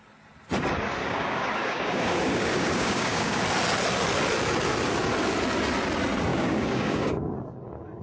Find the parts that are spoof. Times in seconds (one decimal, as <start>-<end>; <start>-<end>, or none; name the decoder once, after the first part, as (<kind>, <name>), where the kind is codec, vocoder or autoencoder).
1.0-3.4 (codec, DAC); 6.3-7.3